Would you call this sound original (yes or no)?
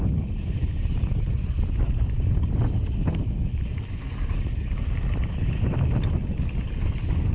yes